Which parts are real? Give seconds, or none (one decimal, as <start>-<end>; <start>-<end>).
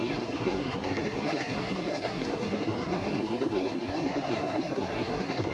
none